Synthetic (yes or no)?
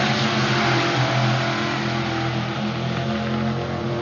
no